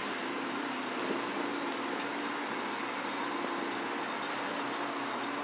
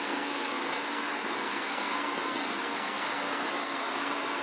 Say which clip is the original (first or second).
first